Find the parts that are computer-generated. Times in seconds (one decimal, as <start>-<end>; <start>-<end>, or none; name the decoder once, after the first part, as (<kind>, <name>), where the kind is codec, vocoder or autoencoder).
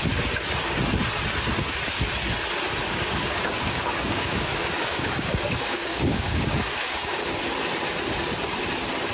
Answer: 2.8-7.4 (codec, DAC)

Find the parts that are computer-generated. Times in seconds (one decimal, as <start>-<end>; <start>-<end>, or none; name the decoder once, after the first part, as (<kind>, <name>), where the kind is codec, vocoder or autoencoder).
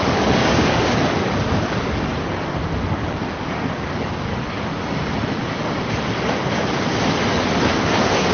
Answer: 0.0-2.1 (codec, DAC); 2.7-4.3; 7.3-8.3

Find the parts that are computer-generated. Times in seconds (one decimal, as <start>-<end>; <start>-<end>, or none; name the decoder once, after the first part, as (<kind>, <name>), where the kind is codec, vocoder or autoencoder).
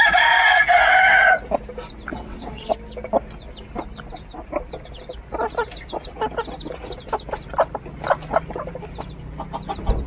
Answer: 2.1-2.7 (vocoder, WaveNeXt)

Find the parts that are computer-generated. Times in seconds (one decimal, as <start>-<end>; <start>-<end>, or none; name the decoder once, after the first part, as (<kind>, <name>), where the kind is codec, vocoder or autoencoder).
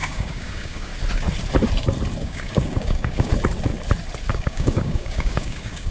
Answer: 0.0-0.9 (codec, DAC); 2.2-3.3; 4.3-5.9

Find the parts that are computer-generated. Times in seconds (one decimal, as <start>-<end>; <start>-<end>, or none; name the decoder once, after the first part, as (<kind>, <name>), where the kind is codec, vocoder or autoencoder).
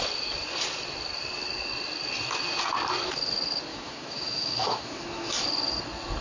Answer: 3.7-5.4 (autoencoder, DAC-VAE)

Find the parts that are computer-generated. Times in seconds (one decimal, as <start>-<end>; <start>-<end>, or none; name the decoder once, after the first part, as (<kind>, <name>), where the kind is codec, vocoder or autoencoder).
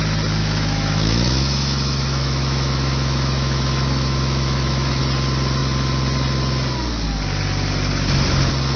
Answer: 0.4-5.0 (autoencoder, DAC-VAE)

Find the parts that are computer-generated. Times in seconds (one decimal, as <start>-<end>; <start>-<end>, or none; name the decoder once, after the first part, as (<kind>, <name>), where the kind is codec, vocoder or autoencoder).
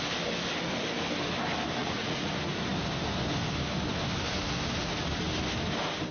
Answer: 1.8-2.3 (vocoder, Vocos)